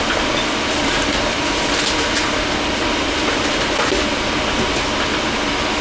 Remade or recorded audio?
recorded